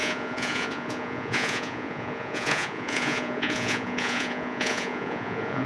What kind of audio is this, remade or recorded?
remade